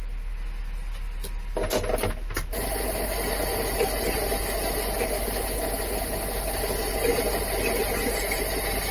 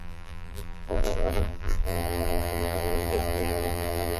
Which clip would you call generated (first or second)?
second